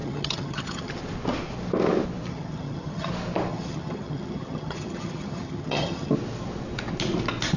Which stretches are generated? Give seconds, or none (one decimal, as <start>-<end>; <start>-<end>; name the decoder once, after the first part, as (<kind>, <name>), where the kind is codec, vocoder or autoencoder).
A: 0.0-0.9 (vocoder, HiFi-GAN); 2.3-3.1; 3.5-6.1